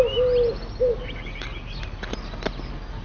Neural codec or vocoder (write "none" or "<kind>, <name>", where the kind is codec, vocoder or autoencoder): none